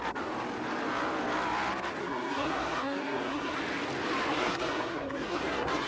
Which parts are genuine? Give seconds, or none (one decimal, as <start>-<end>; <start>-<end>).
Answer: 0.0-2.0; 3.6-4.3